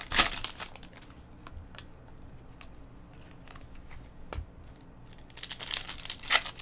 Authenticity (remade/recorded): recorded